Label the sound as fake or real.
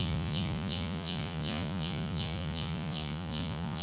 fake